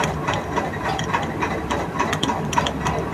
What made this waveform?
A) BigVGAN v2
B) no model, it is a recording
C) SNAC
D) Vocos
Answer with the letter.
A